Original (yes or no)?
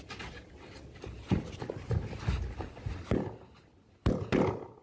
yes